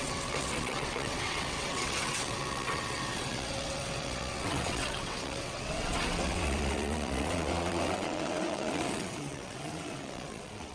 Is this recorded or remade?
remade